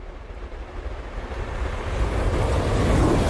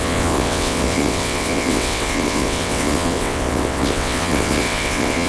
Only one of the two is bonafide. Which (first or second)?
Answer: first